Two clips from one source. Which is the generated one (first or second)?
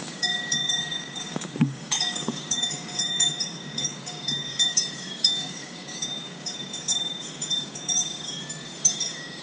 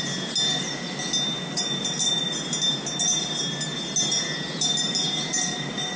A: first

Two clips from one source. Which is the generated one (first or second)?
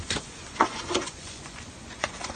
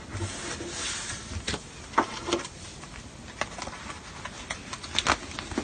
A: first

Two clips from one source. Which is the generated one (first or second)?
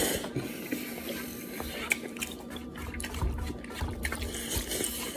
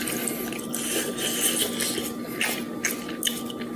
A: first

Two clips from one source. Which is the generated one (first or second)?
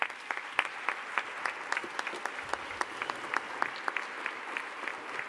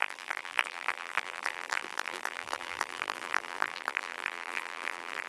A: second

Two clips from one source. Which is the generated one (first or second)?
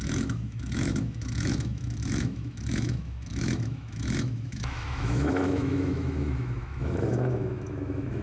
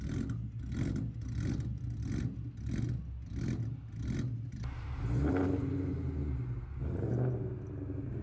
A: first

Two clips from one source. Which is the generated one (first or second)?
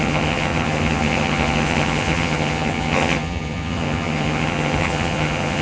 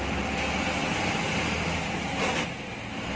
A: first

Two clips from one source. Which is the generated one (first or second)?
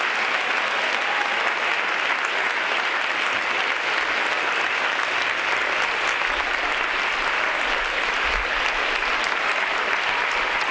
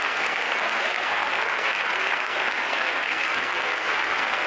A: second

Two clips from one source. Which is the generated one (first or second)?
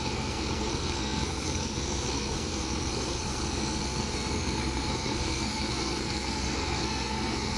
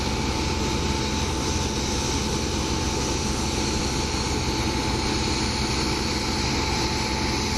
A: first